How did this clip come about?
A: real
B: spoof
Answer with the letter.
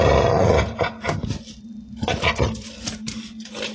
A